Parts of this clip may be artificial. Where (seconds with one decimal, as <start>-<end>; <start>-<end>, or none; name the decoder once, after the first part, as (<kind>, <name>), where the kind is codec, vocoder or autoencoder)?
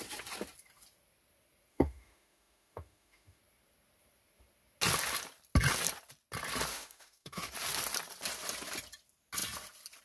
1.7-3.4 (autoencoder, DAC-VAE); 6.7-7.5